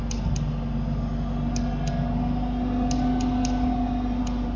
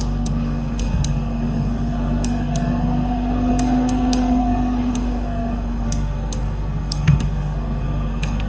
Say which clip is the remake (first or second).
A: second